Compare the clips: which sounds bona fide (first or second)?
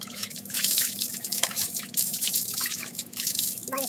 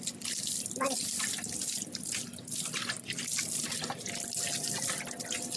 second